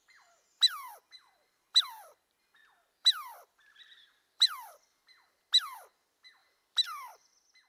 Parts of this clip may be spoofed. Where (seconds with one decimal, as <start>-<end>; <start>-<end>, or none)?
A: 0.9-5.4